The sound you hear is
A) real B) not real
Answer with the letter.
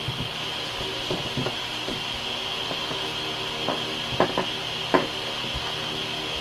A